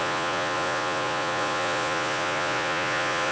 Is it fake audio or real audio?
fake